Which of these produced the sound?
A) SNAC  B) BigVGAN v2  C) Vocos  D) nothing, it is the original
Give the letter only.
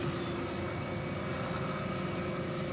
D